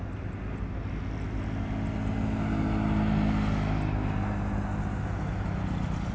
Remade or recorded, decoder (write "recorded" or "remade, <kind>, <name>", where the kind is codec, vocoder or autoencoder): recorded